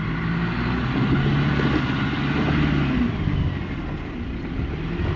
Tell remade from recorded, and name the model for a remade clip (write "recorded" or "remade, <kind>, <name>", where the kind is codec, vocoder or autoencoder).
recorded